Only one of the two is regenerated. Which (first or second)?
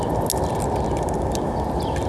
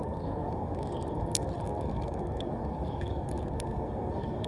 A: second